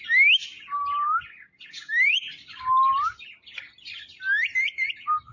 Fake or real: real